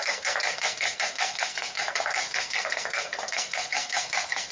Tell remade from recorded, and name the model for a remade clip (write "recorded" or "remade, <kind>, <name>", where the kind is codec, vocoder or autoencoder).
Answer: remade, codec, SNAC